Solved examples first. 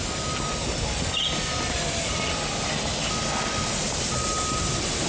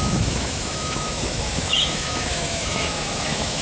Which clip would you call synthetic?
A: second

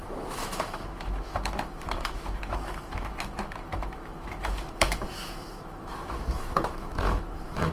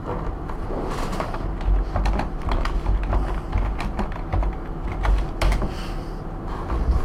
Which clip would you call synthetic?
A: first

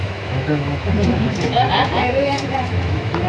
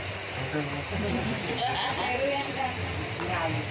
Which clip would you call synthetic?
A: first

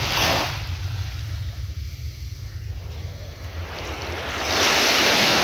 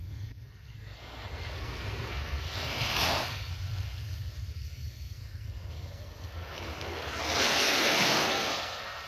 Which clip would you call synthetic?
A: second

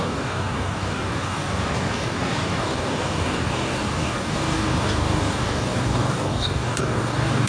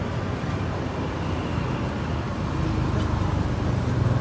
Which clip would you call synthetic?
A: first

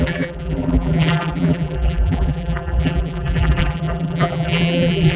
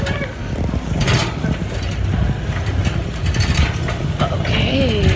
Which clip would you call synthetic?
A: first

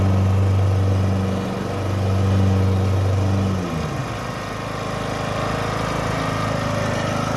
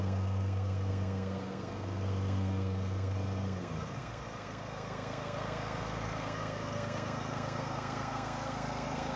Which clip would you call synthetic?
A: second